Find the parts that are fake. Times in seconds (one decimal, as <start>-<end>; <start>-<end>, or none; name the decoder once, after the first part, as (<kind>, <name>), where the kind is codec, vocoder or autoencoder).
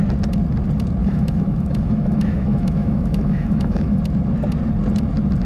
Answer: 1.0-4.0 (autoencoder, DAC-VAE)